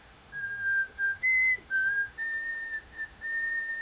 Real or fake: fake